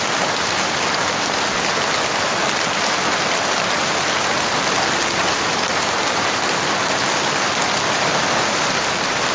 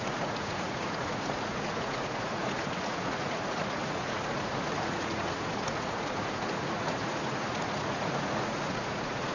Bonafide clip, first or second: first